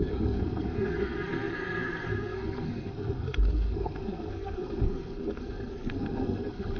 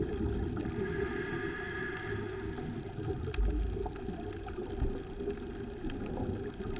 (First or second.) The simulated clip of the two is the first